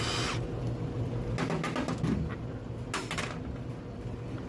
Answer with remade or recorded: recorded